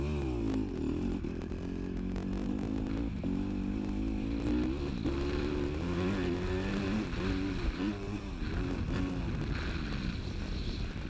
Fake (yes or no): no